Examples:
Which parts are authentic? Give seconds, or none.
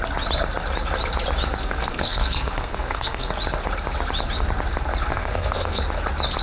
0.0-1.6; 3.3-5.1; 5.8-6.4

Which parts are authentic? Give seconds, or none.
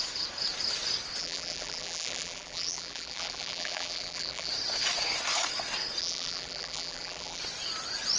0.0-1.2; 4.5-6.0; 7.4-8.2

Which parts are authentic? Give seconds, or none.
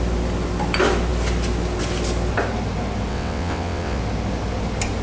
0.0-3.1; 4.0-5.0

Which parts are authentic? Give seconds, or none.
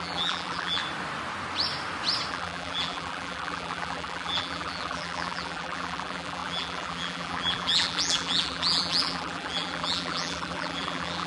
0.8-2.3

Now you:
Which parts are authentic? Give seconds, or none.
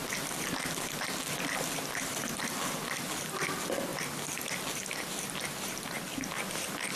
0.0-7.0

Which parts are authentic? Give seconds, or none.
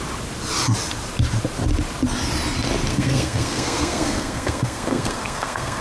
0.0-2.9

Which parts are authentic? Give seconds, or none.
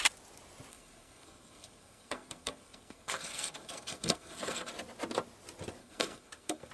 0.0-0.7; 4.7-5.8